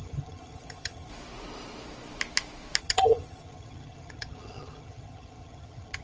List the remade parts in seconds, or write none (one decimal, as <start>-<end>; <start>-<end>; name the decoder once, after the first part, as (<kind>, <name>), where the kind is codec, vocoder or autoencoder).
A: 0.0-1.1 (vocoder, HiFi-GAN); 2.8-6.0